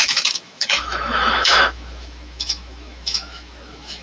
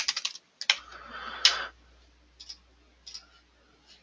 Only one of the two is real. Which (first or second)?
second